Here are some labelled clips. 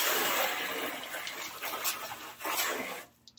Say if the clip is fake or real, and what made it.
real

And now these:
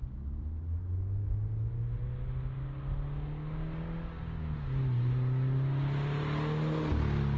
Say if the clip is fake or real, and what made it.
real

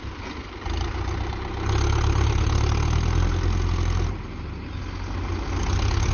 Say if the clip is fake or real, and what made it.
real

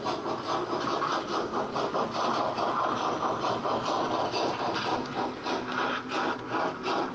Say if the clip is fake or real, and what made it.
real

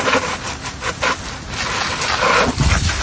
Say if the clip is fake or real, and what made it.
real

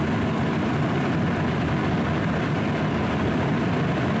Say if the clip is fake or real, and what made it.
real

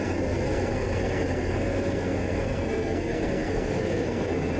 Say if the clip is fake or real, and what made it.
fake, codec, SNAC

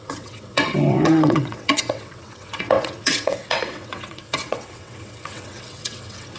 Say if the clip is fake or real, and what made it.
fake, vocoder, WaveNeXt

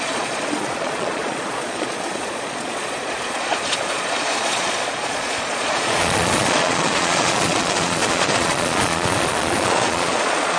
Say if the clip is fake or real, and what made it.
fake, vocoder, Vocos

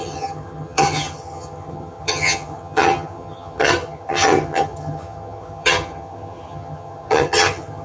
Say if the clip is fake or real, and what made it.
fake, vocoder, HiFi-GAN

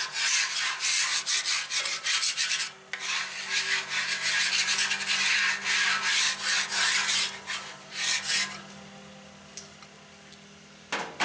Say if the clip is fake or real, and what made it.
real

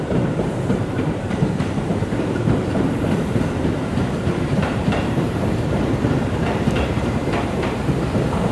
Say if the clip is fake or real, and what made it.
fake, vocoder, BigVGAN v2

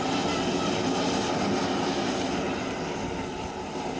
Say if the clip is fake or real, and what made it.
real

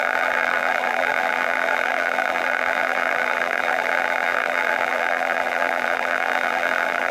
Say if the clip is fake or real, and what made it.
fake, vocoder, BigVGAN v2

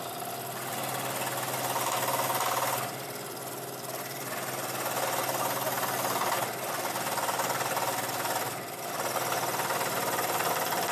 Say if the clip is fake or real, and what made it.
real